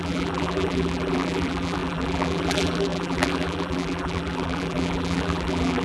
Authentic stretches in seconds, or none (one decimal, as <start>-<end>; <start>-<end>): none